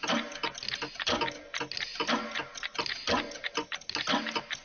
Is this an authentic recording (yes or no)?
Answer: yes